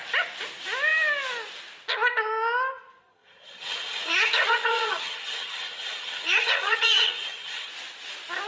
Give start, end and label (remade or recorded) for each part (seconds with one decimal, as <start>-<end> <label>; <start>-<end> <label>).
0.0-3.1 recorded; 3.1-7.7 remade; 7.7-8.5 recorded